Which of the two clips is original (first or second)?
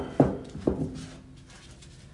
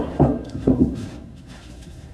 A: first